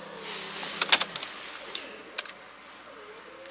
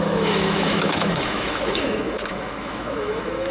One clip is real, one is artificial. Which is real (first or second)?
first